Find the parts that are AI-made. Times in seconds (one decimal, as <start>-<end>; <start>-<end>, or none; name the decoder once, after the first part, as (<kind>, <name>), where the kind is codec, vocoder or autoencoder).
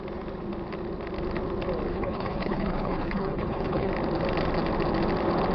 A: 1.9-3.9 (codec, HILCodec)